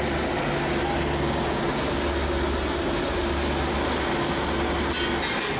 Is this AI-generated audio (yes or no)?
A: no